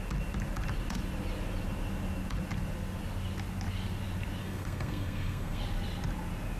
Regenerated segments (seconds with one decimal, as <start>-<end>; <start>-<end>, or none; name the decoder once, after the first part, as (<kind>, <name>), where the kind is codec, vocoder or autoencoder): 4.4-5.6 (codec, SNAC)